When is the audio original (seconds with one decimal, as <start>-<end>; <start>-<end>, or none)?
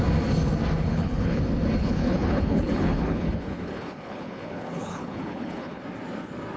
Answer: 0.0-0.9; 1.4-1.8; 5.8-6.6